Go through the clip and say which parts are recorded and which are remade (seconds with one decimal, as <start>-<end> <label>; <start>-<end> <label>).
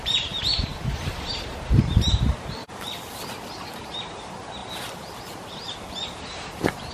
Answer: 0.0-2.6 remade; 2.6-3.6 recorded; 3.6-4.6 remade; 4.6-5.5 recorded; 5.5-6.9 remade